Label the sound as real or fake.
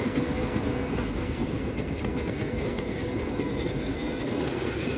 fake